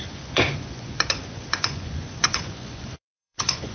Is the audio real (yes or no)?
no